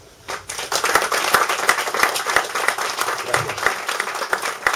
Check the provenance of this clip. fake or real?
real